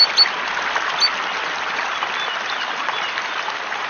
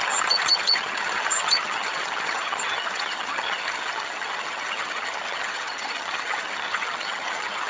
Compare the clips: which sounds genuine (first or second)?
first